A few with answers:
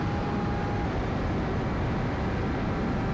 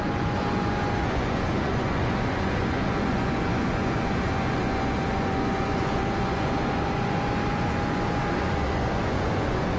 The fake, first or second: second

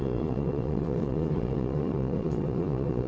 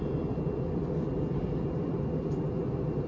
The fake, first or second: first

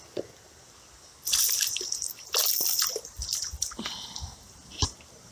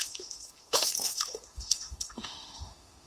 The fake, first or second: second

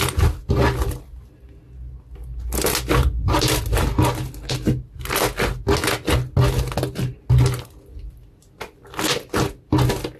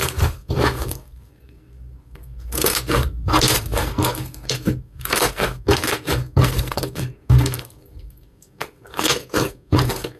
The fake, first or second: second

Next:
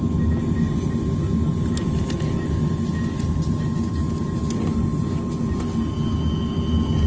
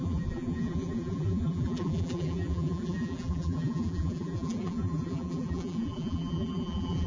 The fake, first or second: second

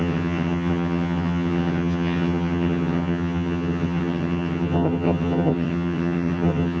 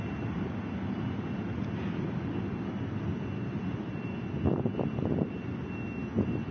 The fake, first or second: first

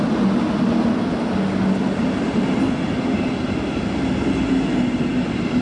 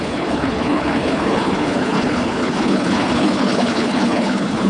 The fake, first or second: second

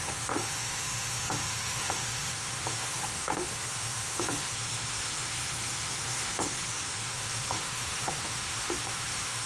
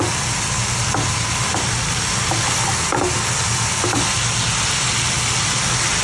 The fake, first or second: first